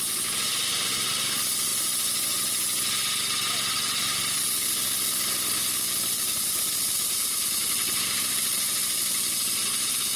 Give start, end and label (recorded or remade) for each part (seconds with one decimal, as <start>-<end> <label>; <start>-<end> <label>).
0.0-1.7 remade; 1.7-6.1 recorded; 6.1-9.6 remade; 9.6-10.2 recorded